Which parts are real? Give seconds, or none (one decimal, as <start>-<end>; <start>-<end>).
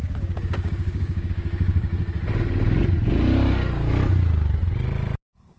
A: 1.9-5.6